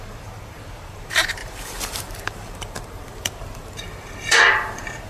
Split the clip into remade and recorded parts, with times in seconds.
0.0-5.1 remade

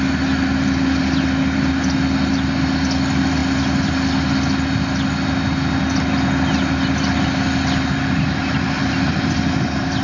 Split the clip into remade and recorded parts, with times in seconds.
0.0-10.0 recorded

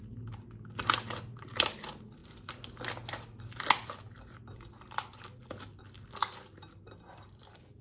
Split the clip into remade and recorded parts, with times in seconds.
0.0-7.8 recorded